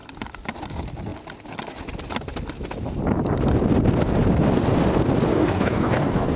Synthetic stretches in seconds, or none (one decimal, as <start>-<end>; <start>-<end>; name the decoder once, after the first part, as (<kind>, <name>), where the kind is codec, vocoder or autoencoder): 5.3-6.4 (codec, DAC)